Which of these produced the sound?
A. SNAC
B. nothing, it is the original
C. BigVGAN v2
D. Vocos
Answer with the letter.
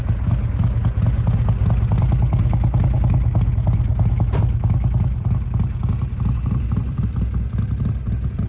B